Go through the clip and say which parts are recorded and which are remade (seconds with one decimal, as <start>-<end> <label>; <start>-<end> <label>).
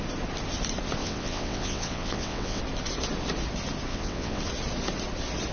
0.0-1.0 recorded; 1.0-2.6 remade; 2.6-3.9 recorded; 3.9-4.4 remade; 4.4-5.5 recorded